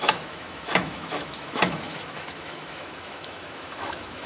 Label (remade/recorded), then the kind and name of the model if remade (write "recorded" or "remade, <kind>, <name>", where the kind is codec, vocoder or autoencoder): remade, autoencoder, DAC-VAE